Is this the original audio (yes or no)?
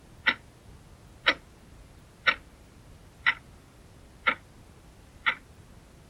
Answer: yes